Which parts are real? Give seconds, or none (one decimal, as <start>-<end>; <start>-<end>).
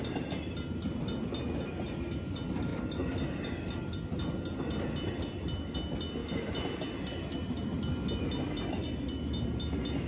0.0-10.1